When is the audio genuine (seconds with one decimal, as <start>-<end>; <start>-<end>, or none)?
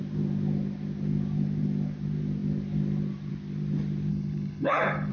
0.0-4.1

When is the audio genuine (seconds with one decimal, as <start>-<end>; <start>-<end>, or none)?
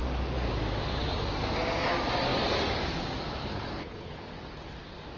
0.0-3.4; 4.2-5.2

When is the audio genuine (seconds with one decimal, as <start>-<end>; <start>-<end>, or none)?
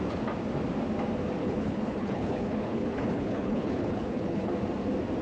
0.0-1.4; 4.5-5.2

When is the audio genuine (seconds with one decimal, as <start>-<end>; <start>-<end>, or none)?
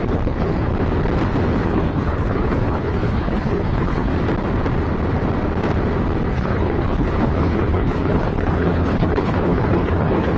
0.7-1.6; 4.1-6.3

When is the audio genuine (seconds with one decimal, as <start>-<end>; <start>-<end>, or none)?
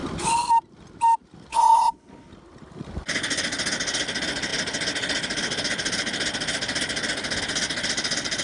0.0-1.5; 2.3-8.4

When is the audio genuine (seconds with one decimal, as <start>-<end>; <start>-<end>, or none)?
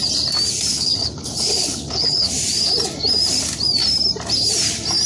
0.0-0.7; 2.3-5.1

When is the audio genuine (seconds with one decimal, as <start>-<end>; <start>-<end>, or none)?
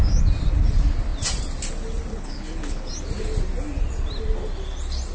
0.0-2.1; 2.9-5.1